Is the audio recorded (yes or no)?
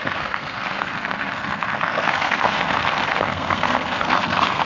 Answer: no